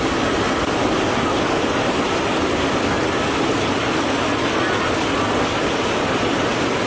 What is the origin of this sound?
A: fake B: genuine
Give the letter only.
B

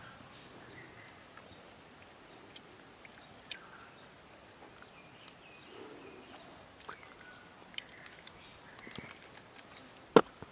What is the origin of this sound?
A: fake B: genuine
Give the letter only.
B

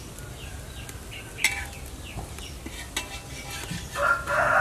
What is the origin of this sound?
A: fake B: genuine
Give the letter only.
B